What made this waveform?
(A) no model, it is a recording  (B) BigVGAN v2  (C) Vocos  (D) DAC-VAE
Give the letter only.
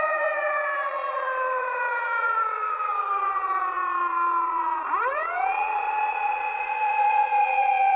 C